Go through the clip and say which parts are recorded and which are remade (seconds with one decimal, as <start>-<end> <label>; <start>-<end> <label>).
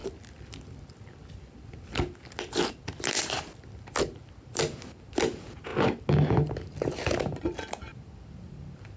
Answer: 0.0-9.0 recorded